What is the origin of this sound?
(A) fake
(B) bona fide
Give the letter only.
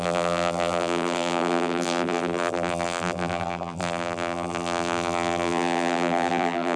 A